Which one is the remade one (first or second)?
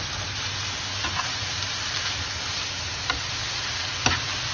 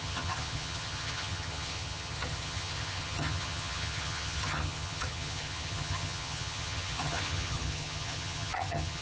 second